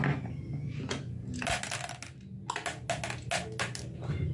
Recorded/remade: recorded